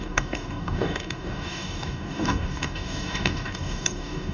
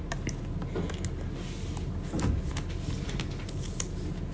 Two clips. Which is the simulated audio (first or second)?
first